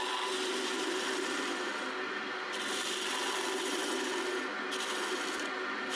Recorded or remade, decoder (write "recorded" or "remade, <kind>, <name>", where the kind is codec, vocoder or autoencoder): recorded